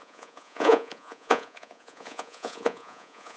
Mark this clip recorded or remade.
remade